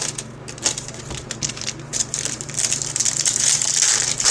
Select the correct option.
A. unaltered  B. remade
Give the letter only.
A